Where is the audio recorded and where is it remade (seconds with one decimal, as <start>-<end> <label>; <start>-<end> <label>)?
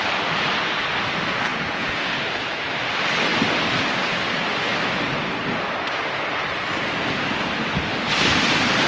0.0-1.5 recorded; 1.5-2.2 remade; 2.2-8.9 recorded